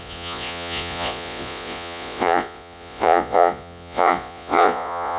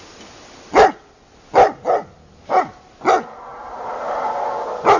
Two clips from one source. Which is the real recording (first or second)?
second